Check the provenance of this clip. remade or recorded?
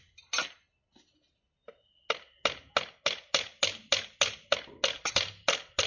recorded